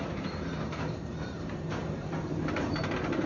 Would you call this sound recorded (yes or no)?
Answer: no